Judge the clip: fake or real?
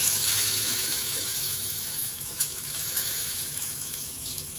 fake